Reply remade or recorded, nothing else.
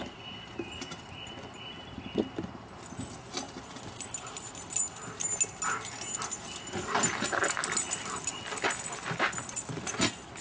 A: recorded